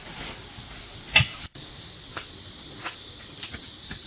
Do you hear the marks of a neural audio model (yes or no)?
no